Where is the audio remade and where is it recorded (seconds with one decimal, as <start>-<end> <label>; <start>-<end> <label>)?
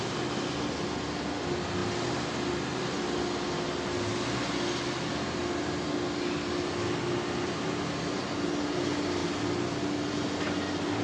0.0-11.0 recorded